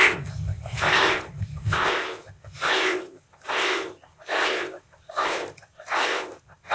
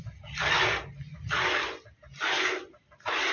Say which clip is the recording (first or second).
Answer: second